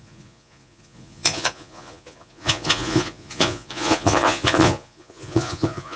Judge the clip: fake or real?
fake